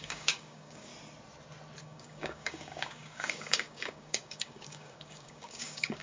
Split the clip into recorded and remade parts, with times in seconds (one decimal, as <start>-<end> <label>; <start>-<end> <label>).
0.0-0.9 remade; 0.9-1.8 recorded; 1.8-6.0 remade